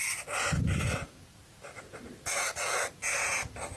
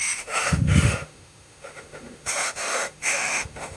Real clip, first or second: first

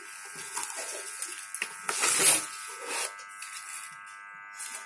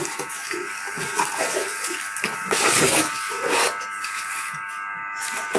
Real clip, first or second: first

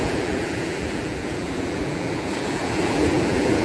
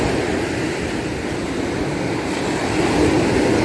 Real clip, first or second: second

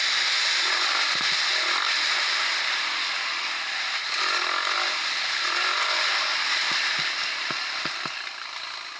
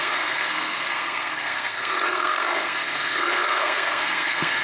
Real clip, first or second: first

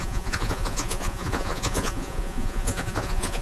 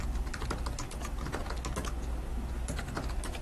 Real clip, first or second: second